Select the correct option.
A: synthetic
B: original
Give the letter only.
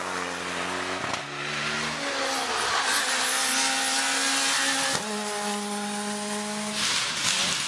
B